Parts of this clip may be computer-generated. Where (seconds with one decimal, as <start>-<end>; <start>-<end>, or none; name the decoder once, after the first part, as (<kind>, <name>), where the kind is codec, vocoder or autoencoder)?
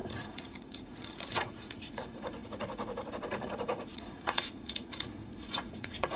0.0-6.2 (vocoder, Vocos)